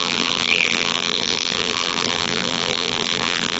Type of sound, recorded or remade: remade